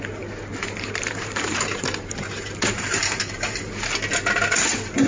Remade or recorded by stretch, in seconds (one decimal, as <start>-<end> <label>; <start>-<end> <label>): 0.0-0.5 recorded; 0.5-3.6 remade; 3.6-5.1 recorded